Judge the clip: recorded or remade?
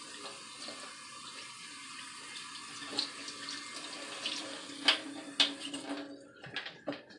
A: recorded